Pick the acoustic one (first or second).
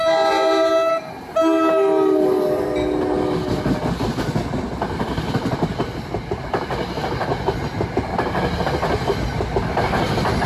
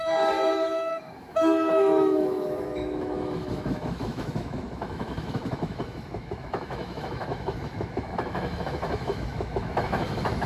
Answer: first